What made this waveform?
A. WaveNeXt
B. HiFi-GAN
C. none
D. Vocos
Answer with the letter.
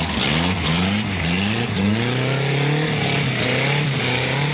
C